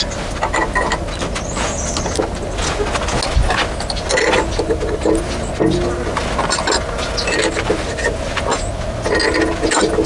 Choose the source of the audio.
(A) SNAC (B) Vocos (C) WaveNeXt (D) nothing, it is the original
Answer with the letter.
D